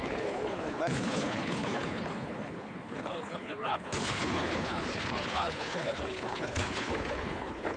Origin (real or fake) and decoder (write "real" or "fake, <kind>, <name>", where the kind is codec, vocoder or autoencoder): fake, codec, HILCodec